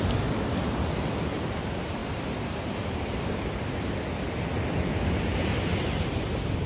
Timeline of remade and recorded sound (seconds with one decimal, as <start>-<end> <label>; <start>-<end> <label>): 0.0-6.7 recorded